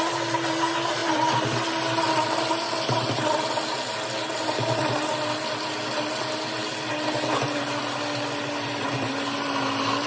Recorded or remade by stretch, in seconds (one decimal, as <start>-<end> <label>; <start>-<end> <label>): 0.0-10.1 recorded